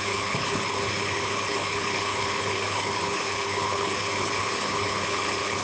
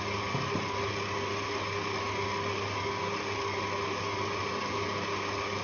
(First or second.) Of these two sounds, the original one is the second